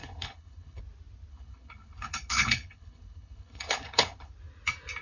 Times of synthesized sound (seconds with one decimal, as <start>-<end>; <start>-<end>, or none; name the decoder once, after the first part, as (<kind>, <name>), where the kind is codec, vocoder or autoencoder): 0.0-0.8 (codec, HILCodec); 1.3-4.3